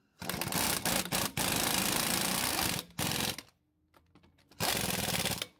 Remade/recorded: recorded